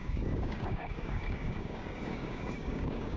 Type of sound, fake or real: fake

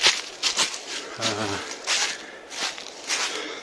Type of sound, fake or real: real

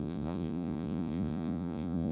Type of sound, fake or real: fake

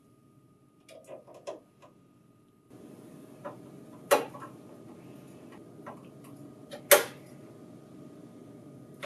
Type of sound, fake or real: real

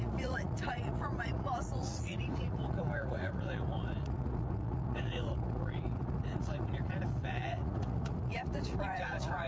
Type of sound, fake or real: fake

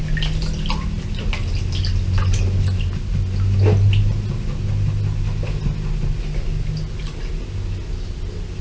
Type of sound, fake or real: real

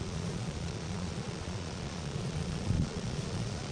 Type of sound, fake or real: fake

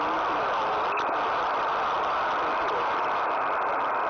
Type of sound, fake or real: real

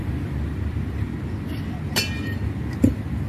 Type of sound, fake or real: fake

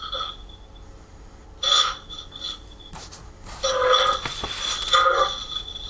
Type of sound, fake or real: real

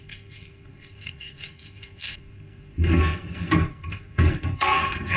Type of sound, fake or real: fake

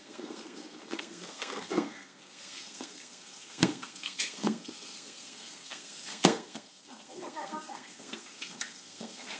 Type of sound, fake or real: fake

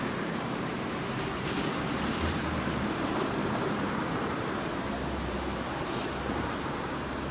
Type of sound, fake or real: fake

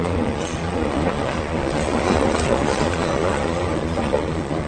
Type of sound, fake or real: fake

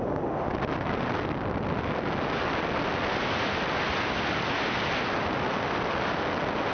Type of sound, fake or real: real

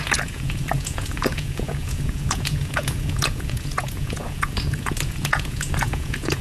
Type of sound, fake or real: fake